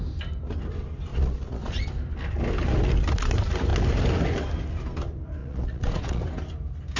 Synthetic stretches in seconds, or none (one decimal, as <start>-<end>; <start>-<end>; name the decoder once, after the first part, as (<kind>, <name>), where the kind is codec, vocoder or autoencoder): 1.1-1.9 (vocoder, Vocos); 5.4-6.2